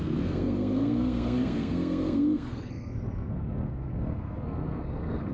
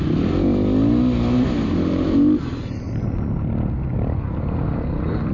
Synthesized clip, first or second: first